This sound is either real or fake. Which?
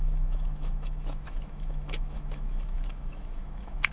fake